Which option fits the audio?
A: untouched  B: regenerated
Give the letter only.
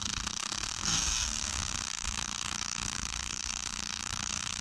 B